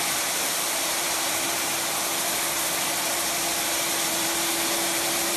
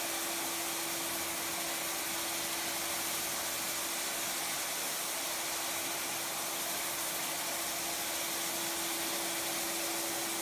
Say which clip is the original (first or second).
second